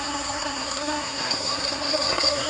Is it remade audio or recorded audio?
remade